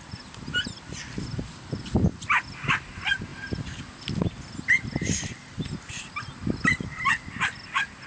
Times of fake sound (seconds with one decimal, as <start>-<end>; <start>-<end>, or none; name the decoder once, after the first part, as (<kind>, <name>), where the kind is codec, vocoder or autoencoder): none